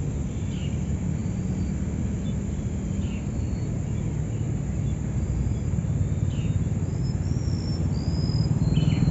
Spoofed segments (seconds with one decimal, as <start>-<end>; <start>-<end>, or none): none